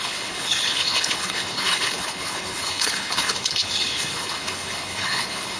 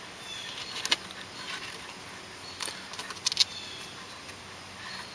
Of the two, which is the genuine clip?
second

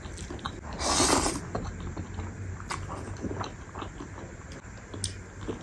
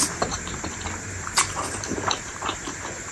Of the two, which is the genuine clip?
first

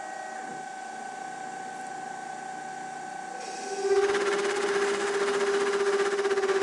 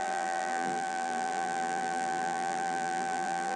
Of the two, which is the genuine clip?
first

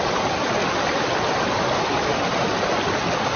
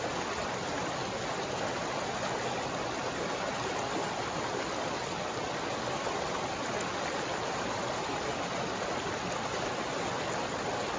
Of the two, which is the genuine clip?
second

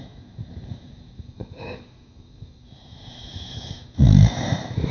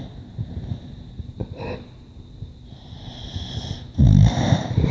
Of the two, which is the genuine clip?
second